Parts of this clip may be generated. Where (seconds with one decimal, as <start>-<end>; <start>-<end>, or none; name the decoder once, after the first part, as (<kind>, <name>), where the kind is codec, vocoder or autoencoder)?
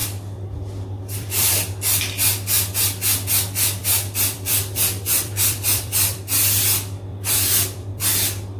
0.0-1.5 (vocoder, BigVGAN v2); 3.8-6.2; 7.1-8.0